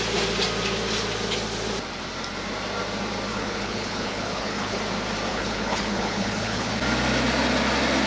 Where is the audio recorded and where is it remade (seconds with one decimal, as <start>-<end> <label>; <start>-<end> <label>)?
0.0-3.3 recorded; 3.3-4.8 remade; 4.8-5.3 recorded; 5.3-6.7 remade; 6.7-8.1 recorded